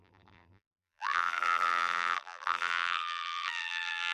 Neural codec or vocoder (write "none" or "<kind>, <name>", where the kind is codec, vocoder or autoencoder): vocoder, BigVGAN v2